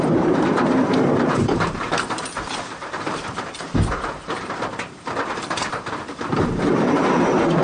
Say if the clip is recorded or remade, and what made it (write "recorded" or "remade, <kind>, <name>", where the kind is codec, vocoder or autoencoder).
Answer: remade, vocoder, BigVGAN v2